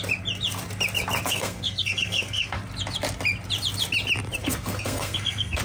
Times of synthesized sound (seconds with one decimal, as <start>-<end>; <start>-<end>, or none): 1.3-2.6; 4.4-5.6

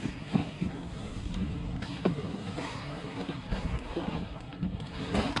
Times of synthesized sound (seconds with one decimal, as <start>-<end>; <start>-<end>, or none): 0.0-5.4

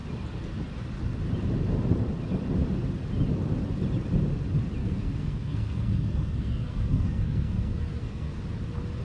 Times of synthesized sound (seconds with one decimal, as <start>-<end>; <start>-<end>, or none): 4.8-8.4